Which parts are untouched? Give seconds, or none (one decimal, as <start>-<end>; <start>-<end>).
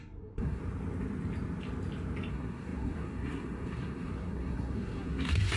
0.6-2.3